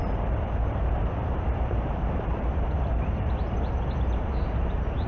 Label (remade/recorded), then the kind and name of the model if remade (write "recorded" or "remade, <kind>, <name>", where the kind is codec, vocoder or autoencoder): remade, vocoder, BigVGAN v2